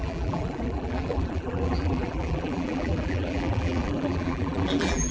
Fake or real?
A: fake